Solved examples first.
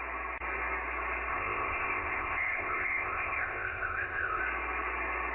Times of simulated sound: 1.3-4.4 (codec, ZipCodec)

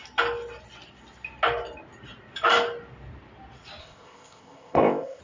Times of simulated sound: 3.8-5.2 (codec, ZipCodec)